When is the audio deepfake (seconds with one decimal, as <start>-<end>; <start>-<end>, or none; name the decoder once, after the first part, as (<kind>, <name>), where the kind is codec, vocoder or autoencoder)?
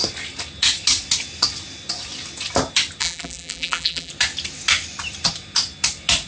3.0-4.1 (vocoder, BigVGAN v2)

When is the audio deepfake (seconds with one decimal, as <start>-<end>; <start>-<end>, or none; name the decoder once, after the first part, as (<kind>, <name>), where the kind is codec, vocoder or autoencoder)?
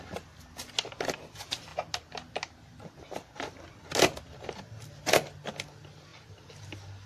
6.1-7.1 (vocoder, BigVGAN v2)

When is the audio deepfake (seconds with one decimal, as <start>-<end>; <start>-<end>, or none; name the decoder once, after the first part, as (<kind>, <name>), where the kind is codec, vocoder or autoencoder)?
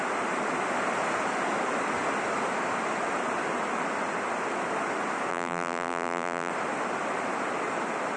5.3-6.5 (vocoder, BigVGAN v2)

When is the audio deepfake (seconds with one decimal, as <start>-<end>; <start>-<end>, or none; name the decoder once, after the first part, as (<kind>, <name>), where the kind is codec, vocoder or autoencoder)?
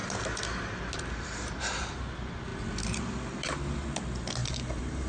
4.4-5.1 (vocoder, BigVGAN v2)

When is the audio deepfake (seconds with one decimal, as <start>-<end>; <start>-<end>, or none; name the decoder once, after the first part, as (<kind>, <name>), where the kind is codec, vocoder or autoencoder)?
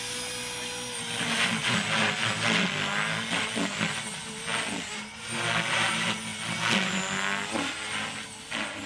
none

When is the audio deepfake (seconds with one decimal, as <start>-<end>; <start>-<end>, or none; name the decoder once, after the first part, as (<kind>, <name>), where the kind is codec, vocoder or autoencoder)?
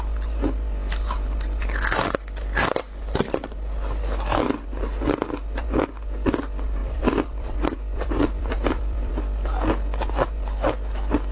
6.8-9.1 (vocoder, BigVGAN v2)